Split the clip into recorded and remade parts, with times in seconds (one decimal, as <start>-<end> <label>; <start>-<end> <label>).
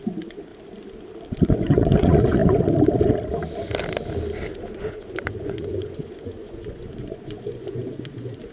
0.0-0.5 remade; 0.5-1.4 recorded; 1.4-2.4 remade; 2.4-4.7 recorded; 4.7-8.5 remade